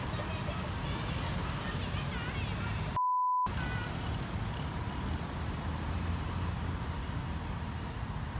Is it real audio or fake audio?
real